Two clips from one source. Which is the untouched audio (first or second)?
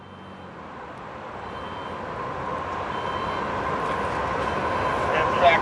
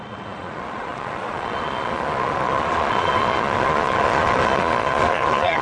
first